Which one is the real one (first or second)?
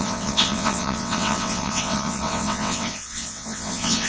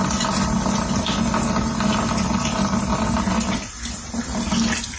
second